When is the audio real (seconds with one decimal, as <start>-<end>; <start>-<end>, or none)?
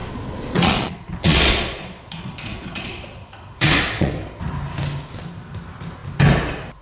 4.1-6.8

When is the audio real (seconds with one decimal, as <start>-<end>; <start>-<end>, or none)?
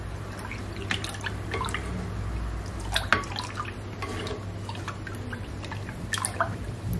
0.0-7.0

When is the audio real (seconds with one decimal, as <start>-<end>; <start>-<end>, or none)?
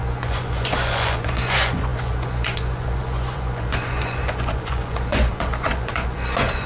none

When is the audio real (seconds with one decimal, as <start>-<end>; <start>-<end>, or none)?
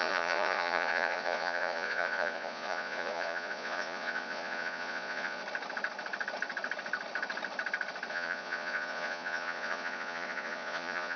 5.4-8.1